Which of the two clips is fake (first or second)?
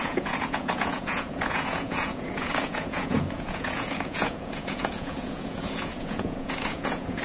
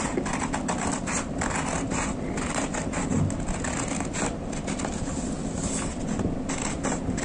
first